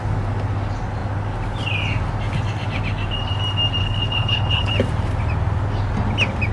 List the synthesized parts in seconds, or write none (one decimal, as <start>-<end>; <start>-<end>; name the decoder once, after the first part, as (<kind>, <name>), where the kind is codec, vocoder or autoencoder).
3.8-4.7 (codec, HILCodec)

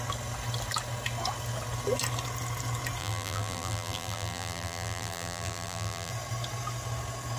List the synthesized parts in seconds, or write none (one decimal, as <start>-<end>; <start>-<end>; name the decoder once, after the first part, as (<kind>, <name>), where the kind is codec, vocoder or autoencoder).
3.0-6.1 (vocoder, BigVGAN v2)

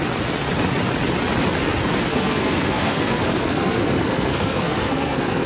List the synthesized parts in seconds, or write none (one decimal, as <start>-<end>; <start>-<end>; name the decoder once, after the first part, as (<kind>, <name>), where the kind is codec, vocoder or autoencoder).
2.1-5.5 (codec, SNAC)

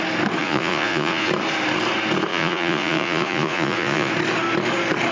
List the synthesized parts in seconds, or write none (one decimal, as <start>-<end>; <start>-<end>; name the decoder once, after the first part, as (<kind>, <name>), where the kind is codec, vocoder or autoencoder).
0.4-1.3 (vocoder, Vocos); 2.3-4.1